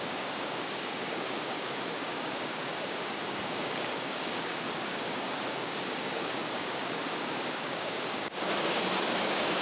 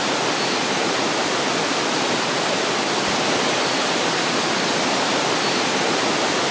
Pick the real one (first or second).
second